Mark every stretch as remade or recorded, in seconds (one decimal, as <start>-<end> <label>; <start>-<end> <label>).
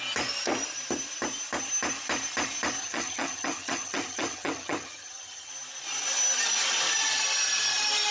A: 0.0-2.8 recorded; 2.8-5.5 remade; 5.5-8.1 recorded